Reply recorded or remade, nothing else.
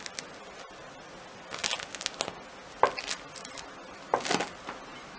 recorded